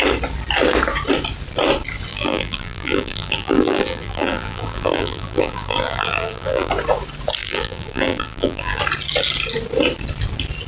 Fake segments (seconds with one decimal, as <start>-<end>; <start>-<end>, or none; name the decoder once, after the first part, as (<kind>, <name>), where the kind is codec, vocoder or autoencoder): 2.1-6.7 (vocoder, BigVGAN v2); 7.4-8.8